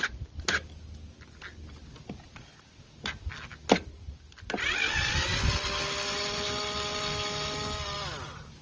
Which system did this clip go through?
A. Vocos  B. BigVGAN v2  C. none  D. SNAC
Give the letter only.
C